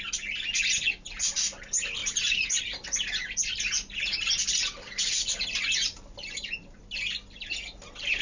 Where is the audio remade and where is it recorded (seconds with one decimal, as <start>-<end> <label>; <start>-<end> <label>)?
0.0-2.0 recorded; 2.0-2.6 remade; 2.6-5.8 recorded; 5.8-6.8 remade; 6.8-8.2 recorded